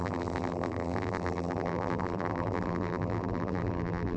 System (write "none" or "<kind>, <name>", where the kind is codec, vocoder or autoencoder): vocoder, BigVGAN v2